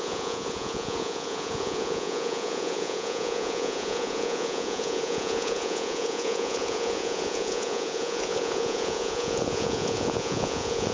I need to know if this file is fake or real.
fake